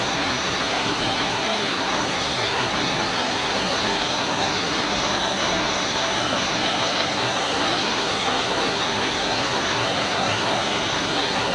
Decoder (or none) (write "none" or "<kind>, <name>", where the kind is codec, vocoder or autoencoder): codec, SNAC